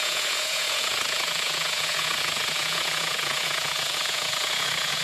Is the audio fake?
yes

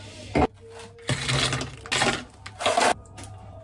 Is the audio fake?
no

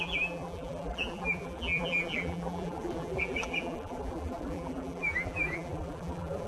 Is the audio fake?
yes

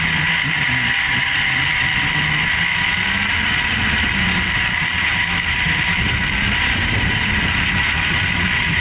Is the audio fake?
no